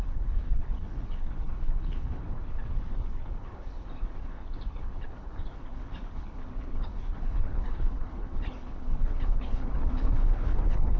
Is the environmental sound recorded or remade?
remade